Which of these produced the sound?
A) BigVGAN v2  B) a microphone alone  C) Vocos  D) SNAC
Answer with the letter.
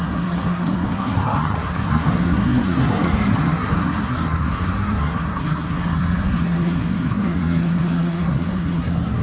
D